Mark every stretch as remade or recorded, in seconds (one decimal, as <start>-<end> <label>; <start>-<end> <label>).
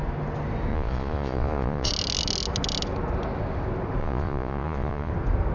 0.0-0.7 recorded; 0.7-1.9 remade; 1.9-4.0 recorded; 4.0-5.1 remade; 5.1-5.5 recorded